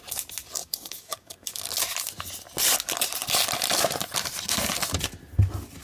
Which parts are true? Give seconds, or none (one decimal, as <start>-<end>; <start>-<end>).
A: 0.0-0.6; 1.6-5.8